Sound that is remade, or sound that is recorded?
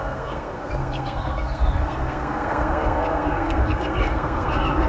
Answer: remade